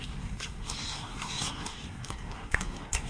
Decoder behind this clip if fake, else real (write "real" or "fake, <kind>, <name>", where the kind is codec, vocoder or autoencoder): fake, codec, SNAC